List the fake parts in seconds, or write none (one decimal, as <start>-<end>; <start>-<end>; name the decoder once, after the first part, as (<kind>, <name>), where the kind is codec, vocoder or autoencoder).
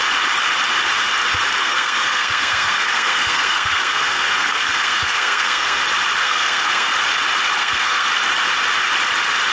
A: 1.6-5.8 (codec, SNAC); 6.2-6.9; 7.6-8.1